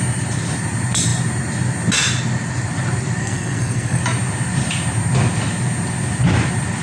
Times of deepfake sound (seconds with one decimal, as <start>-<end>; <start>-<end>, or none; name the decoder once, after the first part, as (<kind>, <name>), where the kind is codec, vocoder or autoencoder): 3.2-4.0 (codec, SNAC)